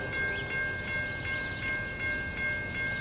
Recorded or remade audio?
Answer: recorded